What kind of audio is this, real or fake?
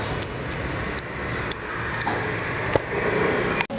real